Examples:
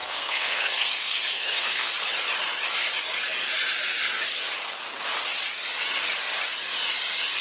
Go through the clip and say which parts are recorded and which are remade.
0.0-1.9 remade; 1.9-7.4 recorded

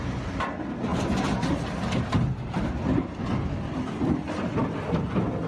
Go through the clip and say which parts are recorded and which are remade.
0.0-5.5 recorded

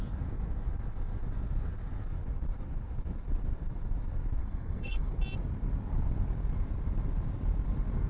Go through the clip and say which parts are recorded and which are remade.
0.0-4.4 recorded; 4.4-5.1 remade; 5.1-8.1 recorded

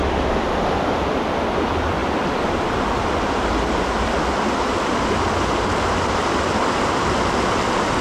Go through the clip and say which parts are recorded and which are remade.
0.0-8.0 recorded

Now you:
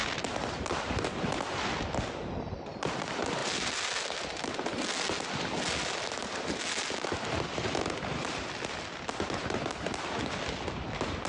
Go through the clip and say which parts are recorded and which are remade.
0.0-11.3 recorded

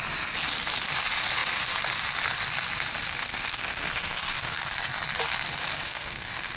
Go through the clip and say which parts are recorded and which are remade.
0.0-3.2 recorded; 3.2-4.6 remade; 4.6-5.7 recorded; 5.7-6.6 remade

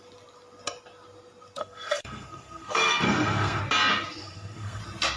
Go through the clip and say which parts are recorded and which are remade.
0.0-1.6 recorded; 1.6-3.6 remade; 3.6-4.2 recorded; 4.2-4.8 remade; 4.8-5.2 recorded